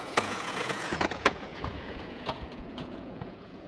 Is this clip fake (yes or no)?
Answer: yes